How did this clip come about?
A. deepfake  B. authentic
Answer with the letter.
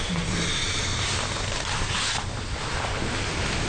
B